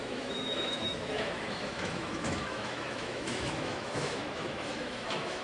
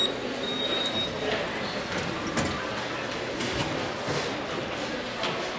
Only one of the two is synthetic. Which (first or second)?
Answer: first